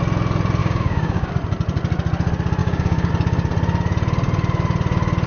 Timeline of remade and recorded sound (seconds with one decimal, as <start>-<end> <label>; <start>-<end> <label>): 0.0-0.6 recorded; 0.6-1.3 remade; 1.3-2.6 recorded; 2.6-3.1 remade; 3.1-5.3 recorded